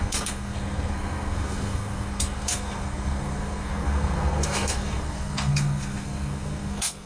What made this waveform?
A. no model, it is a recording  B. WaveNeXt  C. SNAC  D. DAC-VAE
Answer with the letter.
C